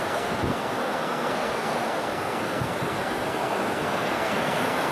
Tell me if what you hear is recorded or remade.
remade